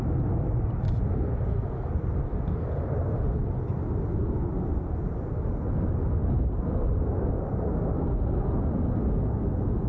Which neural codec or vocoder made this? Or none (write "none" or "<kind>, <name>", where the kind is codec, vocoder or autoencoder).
none